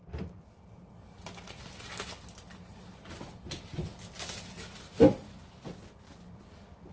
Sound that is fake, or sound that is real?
real